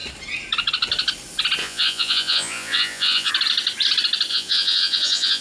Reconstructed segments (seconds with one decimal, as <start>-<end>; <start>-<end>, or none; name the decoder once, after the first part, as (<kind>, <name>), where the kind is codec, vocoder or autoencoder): 1.6-3.3 (vocoder, Vocos); 4.3-5.4